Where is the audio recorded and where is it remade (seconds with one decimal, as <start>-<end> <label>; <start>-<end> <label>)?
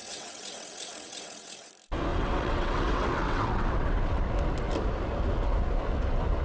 0.0-1.7 remade; 1.7-2.1 recorded; 2.1-4.2 remade; 4.2-6.4 recorded